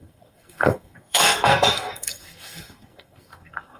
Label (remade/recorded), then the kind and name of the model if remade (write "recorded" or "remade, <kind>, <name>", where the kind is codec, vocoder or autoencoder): remade, codec, SNAC